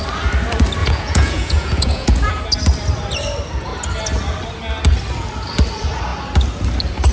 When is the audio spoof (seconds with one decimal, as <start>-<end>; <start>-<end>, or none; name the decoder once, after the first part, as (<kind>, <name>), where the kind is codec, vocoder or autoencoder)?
0.8-2.3 (vocoder, Vocos)